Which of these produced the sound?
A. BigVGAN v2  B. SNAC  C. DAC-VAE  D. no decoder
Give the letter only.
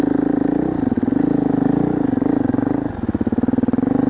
D